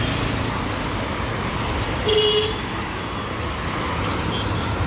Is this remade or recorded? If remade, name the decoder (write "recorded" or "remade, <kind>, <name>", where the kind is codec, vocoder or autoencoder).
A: recorded